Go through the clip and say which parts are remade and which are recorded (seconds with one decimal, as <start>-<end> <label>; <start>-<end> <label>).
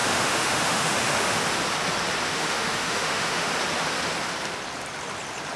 0.0-1.4 remade; 1.4-2.3 recorded; 2.3-3.5 remade; 3.5-5.6 recorded